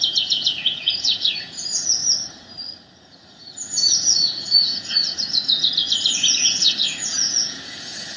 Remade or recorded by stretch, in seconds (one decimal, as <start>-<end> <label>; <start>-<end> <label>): 0.0-2.0 remade; 2.0-3.3 recorded; 3.3-8.2 remade